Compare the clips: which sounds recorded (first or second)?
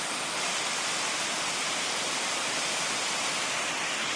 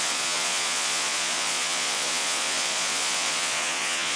first